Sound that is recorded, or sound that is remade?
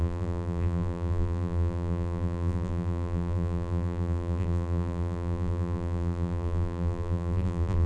remade